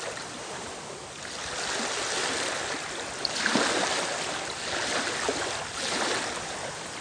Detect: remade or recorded recorded